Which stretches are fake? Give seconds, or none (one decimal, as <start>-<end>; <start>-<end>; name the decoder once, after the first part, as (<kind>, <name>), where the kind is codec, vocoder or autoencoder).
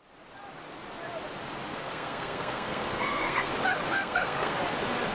1.7-3.5 (codec, SNAC); 3.9-4.6